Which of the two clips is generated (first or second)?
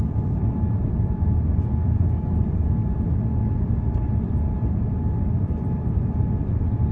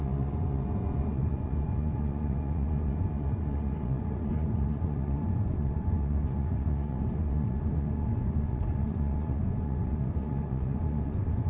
second